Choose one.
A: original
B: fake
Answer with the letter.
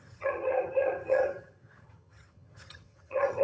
B